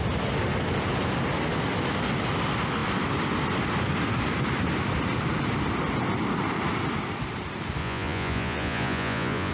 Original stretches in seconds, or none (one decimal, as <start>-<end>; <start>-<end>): 0.0-7.8